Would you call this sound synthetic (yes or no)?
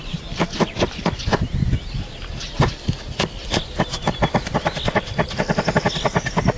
no